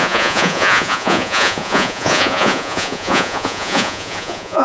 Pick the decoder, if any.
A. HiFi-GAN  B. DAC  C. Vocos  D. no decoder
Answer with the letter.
C